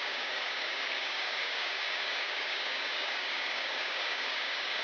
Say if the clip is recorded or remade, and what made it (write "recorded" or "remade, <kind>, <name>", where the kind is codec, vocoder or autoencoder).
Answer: remade, codec, DAC